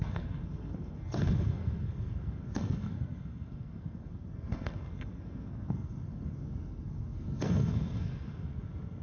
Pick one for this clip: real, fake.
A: fake